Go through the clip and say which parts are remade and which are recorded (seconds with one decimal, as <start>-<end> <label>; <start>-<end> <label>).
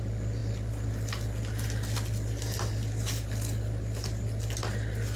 0.0-5.2 recorded